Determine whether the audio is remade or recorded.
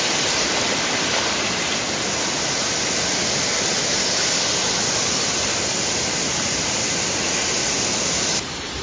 recorded